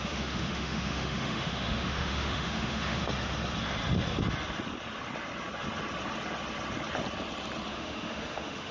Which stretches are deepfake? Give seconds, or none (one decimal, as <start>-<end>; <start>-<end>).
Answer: 0.0-3.0; 7.7-8.7